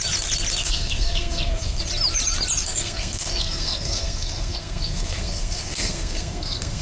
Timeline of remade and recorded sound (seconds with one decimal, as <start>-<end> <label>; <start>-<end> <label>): 0.0-0.6 recorded; 0.6-1.8 remade; 1.8-2.6 recorded; 2.6-6.8 remade